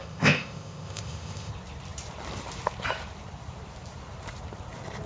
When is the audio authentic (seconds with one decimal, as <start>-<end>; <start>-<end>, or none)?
1.5-5.1